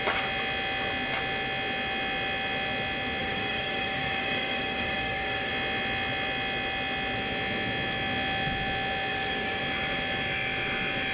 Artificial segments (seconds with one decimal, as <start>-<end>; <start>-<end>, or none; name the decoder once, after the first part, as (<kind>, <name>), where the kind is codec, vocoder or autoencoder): 3.2-5.5 (codec, DAC); 9.1-9.6